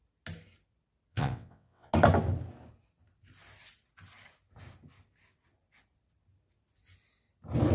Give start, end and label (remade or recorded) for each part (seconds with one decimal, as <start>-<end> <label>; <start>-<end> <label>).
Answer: 0.0-1.1 recorded; 1.1-1.9 remade; 1.9-7.7 recorded